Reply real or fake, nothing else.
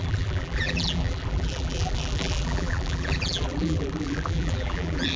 fake